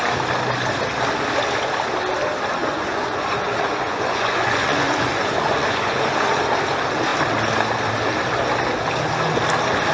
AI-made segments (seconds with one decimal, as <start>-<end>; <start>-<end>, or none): 2.6-6.4